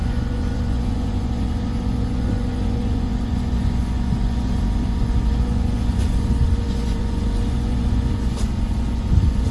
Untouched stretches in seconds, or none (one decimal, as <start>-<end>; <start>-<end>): none